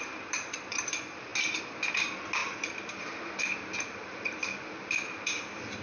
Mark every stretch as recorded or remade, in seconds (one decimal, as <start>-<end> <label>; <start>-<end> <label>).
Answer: 0.0-1.3 remade; 1.3-1.9 recorded; 1.9-5.8 remade